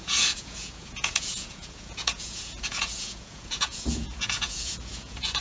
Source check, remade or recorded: remade